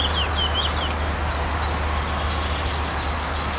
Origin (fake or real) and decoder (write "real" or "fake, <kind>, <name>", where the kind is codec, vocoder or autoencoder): real